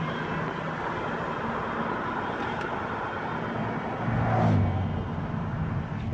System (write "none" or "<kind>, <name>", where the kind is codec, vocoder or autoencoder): none